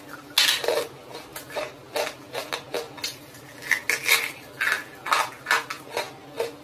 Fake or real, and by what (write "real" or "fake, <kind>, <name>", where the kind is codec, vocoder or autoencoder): real